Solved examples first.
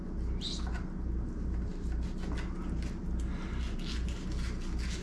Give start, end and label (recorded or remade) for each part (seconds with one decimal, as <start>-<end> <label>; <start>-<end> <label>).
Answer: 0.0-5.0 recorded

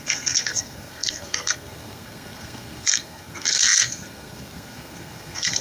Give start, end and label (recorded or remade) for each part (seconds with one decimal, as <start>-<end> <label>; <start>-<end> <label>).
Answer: 0.0-5.6 remade

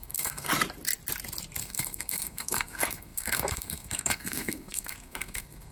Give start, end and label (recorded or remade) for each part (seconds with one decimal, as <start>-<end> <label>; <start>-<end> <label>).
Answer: 0.0-0.5 remade; 0.5-1.6 recorded; 1.6-5.7 remade